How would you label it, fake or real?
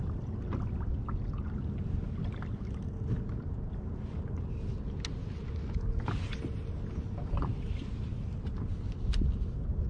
real